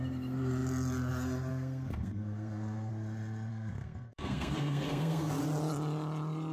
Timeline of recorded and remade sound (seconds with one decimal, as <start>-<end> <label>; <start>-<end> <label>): 0.0-1.5 recorded; 1.5-2.9 remade; 2.9-3.5 recorded; 3.5-5.3 remade; 5.3-6.5 recorded